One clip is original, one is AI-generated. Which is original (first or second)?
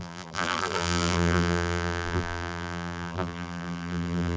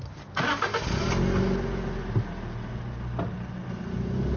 second